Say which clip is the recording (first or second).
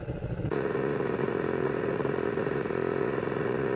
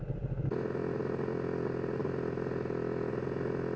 second